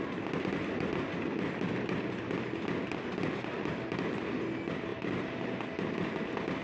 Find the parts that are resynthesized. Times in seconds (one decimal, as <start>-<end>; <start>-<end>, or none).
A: 4.9-5.6